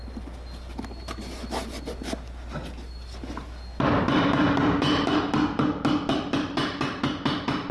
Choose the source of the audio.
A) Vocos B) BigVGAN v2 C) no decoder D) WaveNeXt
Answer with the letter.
C